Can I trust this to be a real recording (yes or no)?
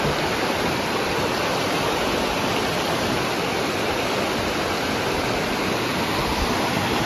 yes